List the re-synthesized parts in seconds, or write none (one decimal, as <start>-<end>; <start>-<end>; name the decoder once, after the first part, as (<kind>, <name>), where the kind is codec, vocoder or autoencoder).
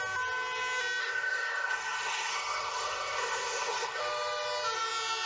1.0-4.0 (codec, SNAC)